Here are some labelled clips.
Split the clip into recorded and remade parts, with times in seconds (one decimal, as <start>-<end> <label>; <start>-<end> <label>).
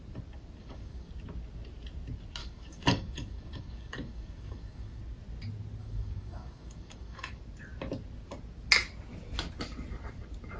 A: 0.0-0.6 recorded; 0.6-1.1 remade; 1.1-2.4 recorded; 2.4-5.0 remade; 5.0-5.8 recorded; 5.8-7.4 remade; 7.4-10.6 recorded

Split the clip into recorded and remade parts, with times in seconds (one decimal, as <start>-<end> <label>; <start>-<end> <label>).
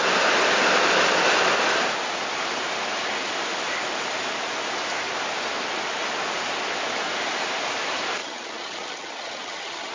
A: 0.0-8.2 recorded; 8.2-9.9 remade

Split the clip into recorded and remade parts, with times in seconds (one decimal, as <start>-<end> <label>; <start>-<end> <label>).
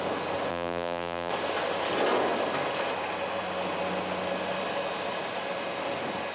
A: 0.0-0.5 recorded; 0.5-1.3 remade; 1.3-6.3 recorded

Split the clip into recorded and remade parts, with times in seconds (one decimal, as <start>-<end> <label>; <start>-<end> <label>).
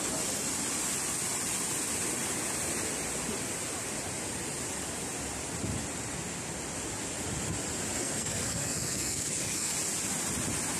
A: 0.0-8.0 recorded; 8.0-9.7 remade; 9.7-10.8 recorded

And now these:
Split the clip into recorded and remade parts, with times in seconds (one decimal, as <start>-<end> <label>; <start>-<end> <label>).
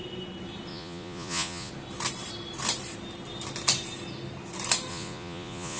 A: 0.0-0.7 recorded; 0.7-1.7 remade; 1.7-4.9 recorded; 4.9-5.8 remade